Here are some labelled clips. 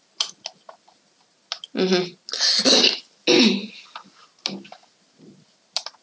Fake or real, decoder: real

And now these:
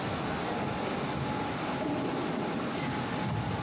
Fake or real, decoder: real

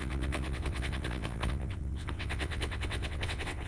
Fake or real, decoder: fake, vocoder, WaveNeXt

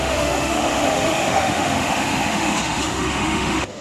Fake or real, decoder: fake, autoencoder, DAC-VAE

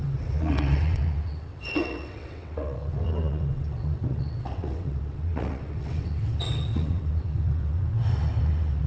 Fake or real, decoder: fake, vocoder, WaveNeXt